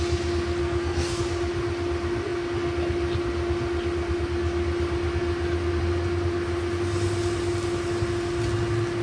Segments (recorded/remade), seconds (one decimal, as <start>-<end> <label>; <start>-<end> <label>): 0.0-0.6 recorded; 0.6-1.2 remade; 1.2-9.0 recorded